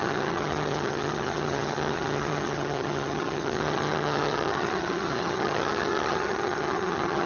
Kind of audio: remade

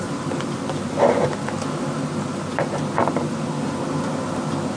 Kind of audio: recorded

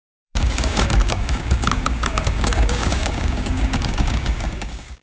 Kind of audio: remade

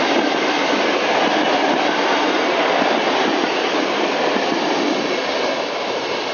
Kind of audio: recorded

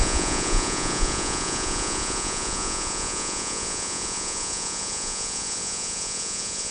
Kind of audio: remade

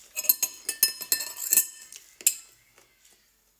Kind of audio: recorded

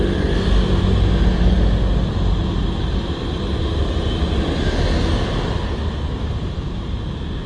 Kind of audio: recorded